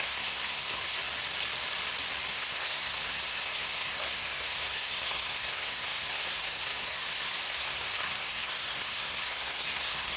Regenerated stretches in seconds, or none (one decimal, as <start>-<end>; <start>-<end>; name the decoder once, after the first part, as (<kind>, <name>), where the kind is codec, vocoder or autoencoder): 0.0-1.0 (codec, SNAC); 2.3-10.2